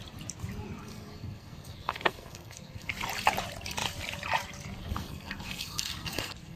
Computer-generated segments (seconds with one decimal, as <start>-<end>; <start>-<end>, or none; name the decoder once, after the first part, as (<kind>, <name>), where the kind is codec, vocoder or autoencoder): 0.8-2.9 (codec, SNAC); 4.8-6.6